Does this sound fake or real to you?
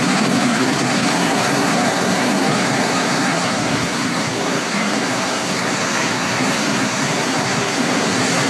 fake